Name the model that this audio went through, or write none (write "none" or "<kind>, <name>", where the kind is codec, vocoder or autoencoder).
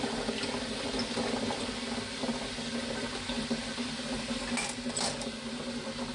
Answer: none